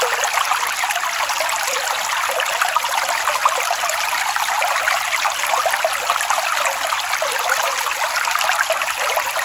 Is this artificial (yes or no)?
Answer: no